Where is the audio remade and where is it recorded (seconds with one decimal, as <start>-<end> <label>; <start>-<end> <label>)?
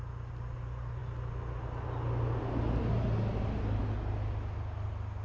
0.0-5.2 recorded